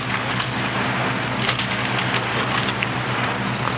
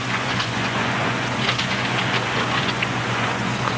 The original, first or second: first